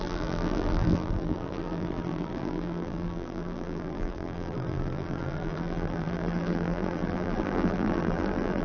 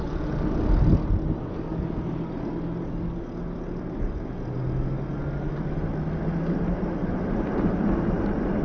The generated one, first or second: first